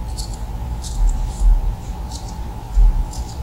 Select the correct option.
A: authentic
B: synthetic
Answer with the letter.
A